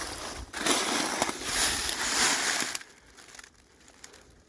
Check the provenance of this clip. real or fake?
real